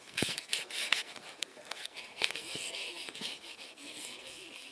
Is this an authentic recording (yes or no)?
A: no